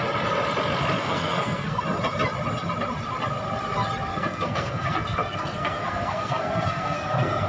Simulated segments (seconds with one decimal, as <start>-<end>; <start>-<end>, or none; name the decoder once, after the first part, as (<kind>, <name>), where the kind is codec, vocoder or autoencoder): 1.0-1.8 (codec, SNAC); 4.1-7.5

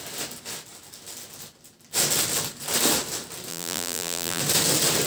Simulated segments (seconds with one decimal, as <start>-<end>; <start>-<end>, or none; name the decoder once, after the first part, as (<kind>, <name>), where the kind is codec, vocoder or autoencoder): 3.5-4.4 (vocoder, BigVGAN v2)

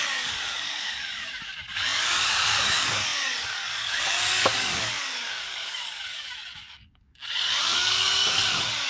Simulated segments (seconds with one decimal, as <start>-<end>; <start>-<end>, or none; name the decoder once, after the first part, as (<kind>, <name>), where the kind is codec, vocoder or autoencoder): 0.0-8.9 (codec, DAC)

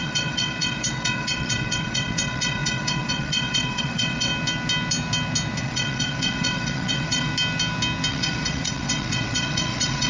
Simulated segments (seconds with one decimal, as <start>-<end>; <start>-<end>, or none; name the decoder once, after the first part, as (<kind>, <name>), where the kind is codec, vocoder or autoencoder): 0.0-4.3 (vocoder, WaveNeXt); 5.6-7.3; 8.1-10.1

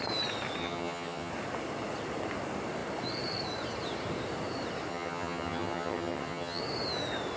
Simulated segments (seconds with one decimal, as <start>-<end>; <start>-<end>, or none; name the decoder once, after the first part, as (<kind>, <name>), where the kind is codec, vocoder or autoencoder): 0.6-1.3 (vocoder, HiFi-GAN); 4.9-6.6

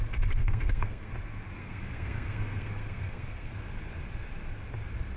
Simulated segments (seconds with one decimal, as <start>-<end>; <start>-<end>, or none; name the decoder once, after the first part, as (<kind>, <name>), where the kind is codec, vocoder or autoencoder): 0.4-1.1 (codec, SNAC); 1.6-3.5

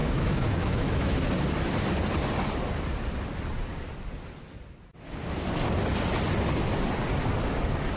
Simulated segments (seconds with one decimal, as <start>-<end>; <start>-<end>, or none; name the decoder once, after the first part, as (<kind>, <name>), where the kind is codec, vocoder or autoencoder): 0.0-1.2 (autoencoder, DAC-VAE)

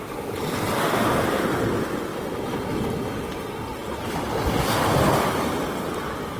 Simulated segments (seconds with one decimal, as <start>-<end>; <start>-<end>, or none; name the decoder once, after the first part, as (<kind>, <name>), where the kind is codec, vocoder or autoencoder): 3.8-4.4 (vocoder, BigVGAN v2)